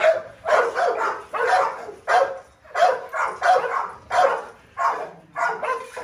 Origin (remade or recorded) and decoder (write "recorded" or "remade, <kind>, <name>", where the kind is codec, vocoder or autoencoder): recorded